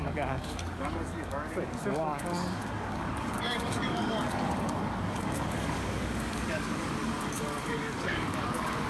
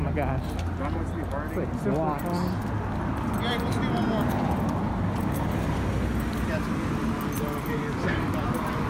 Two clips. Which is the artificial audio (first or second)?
first